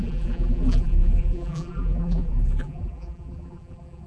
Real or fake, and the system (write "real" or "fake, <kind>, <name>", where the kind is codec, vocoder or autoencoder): fake, vocoder, BigVGAN v2